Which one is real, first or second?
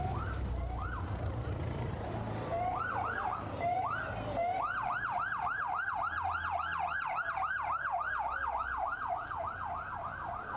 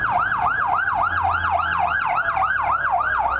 second